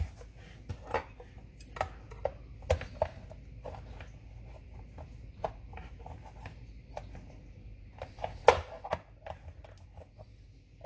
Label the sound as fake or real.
real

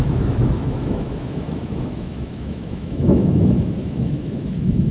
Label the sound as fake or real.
fake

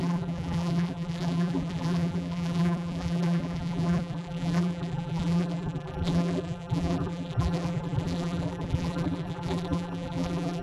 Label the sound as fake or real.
fake